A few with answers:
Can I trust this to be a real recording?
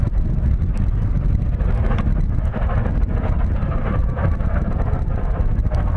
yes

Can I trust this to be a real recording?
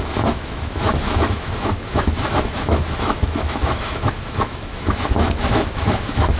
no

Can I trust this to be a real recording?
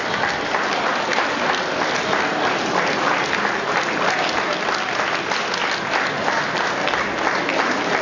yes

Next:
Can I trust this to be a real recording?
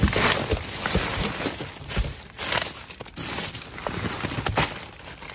yes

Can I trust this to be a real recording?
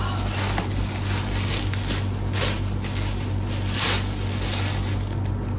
yes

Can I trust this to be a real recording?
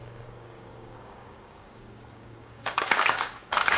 no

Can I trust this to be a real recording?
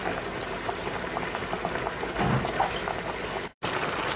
yes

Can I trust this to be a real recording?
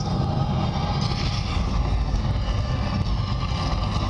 yes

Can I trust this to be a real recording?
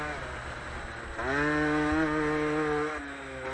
yes